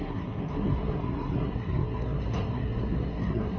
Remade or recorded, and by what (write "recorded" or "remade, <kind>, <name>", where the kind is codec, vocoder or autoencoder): remade, codec, SNAC